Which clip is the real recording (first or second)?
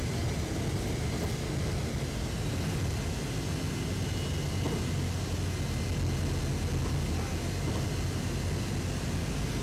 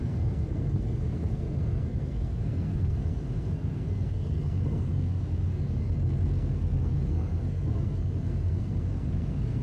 first